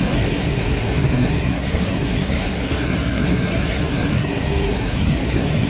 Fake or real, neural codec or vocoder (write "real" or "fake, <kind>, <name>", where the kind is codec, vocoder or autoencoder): fake, codec, SNAC